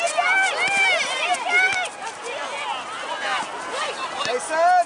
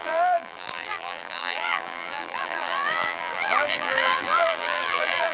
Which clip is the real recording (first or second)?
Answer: first